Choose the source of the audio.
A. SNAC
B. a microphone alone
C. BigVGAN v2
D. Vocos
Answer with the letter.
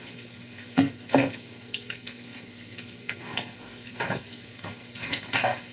A